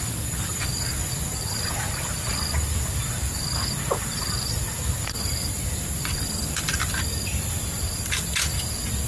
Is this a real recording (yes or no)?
no